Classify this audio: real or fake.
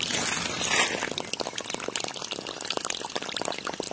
real